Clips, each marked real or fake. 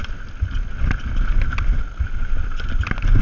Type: real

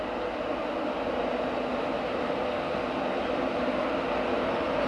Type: real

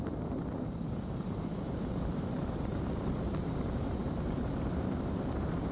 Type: fake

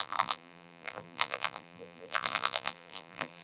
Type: fake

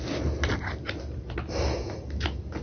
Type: real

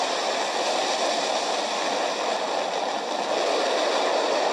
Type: real